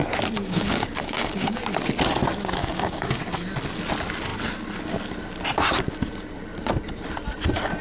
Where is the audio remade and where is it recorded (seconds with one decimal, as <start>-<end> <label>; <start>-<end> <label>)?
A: 0.0-0.4 recorded; 0.4-1.6 remade; 1.6-2.6 recorded; 2.6-3.2 remade; 3.2-7.8 recorded